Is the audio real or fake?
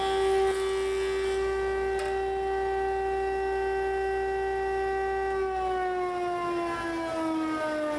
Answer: real